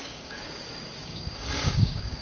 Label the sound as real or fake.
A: fake